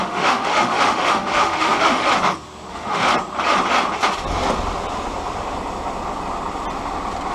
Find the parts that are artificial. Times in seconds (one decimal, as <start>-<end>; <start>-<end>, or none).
0.0-2.1; 2.7-3.1